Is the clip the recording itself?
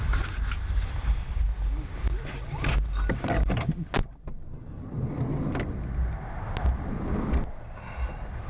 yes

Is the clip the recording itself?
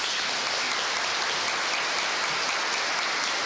yes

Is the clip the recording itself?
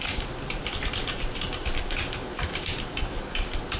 no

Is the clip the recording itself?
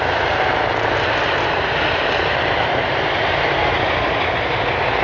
yes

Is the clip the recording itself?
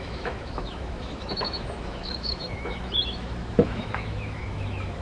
no